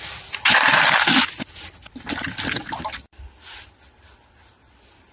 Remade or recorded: remade